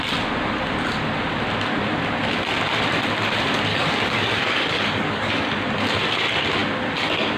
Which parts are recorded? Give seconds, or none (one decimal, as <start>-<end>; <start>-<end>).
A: 0.0-3.7; 5.3-7.4